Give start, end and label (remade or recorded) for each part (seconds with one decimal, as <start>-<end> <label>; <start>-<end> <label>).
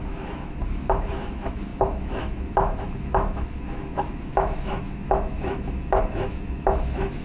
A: 0.0-7.2 remade